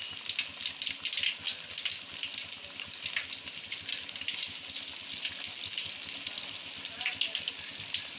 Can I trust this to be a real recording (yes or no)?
yes